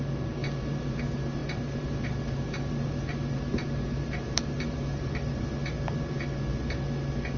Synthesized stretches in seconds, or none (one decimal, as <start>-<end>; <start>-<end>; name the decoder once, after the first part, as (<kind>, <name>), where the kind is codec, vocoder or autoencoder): 0.0-5.6 (vocoder, BigVGAN v2)